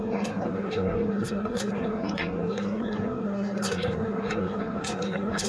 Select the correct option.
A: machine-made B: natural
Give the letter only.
A